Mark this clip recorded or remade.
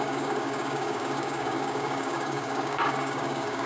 remade